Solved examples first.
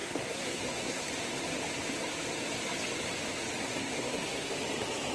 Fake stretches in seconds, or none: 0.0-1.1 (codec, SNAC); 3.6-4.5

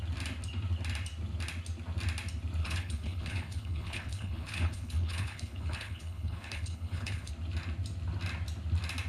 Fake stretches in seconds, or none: 2.6-7.3 (codec, HILCodec)